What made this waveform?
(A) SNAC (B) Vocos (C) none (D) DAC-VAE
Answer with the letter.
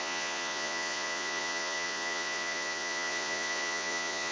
B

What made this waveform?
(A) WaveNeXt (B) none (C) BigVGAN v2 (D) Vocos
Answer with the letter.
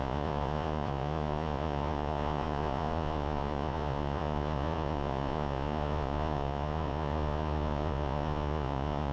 D